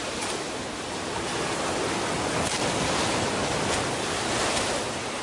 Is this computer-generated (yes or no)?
no